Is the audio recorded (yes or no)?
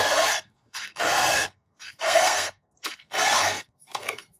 no